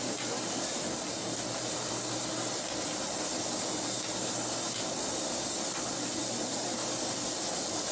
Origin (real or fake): real